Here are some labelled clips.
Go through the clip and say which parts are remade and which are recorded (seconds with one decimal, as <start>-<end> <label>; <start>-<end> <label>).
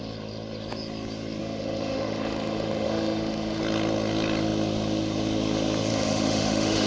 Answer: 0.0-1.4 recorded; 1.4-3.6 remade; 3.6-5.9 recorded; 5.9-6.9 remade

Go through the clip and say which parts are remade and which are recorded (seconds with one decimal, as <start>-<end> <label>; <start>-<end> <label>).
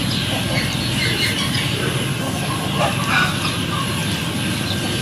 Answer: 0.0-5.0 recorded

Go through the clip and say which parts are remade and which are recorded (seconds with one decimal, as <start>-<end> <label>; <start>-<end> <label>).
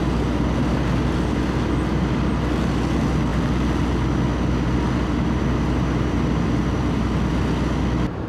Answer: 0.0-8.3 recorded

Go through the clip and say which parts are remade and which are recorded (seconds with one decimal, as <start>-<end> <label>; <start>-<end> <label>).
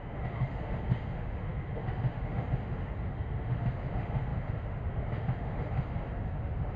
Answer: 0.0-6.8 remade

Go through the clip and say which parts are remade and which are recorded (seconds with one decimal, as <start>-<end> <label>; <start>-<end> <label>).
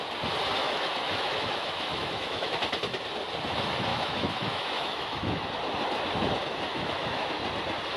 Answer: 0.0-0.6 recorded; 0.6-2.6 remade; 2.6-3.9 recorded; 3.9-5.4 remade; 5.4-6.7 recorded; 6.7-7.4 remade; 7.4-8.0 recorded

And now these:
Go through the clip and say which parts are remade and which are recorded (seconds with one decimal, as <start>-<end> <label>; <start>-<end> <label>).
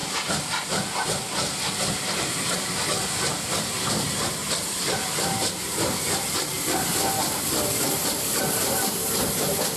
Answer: 0.0-9.8 recorded